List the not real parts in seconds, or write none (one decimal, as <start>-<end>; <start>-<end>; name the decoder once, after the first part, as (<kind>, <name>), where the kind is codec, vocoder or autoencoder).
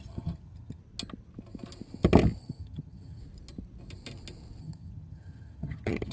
0.0-0.8 (vocoder, HiFi-GAN); 2.4-3.2; 4.6-6.1